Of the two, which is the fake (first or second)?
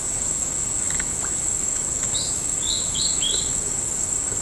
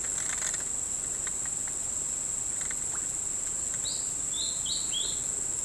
first